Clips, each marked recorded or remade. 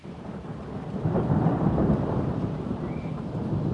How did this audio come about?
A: remade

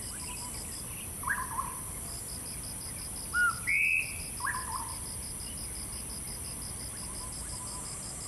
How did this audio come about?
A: recorded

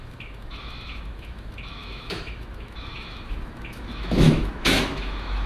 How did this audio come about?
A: remade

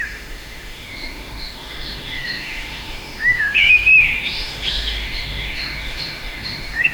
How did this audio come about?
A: remade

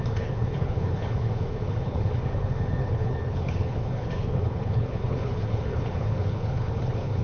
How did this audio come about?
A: remade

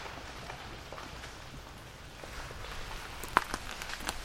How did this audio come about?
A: recorded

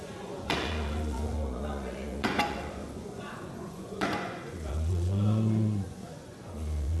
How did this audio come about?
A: remade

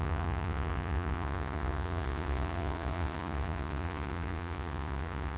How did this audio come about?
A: remade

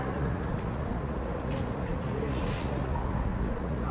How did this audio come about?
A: remade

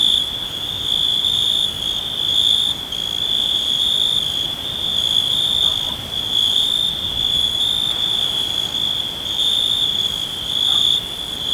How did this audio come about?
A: recorded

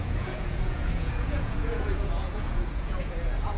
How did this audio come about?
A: remade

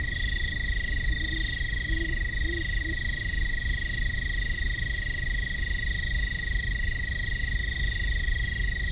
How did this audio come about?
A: remade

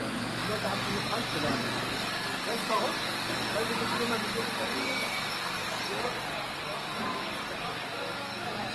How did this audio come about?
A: remade